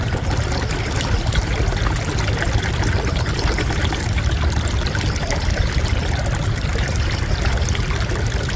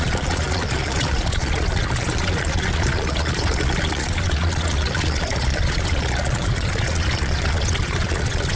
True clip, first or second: first